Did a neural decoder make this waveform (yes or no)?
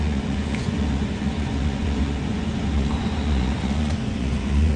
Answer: yes